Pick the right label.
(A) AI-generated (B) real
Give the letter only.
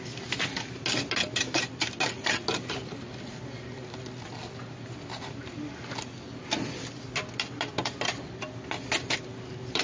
B